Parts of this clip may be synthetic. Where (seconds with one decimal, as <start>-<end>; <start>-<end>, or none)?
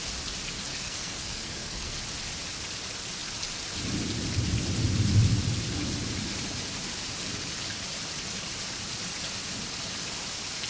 0.7-2.0